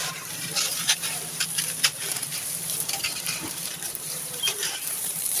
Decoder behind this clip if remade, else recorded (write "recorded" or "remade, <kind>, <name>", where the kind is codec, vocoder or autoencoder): remade, vocoder, BigVGAN v2